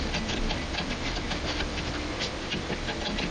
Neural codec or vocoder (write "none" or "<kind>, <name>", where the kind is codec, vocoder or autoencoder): vocoder, BigVGAN v2